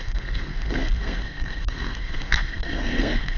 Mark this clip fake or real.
fake